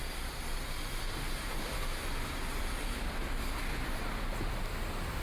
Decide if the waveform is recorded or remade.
recorded